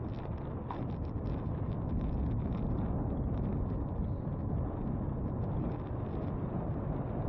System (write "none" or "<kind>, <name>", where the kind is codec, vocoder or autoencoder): none